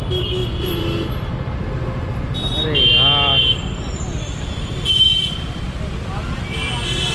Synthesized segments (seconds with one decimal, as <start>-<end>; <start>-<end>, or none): 0.4-1.3; 3.3-6.4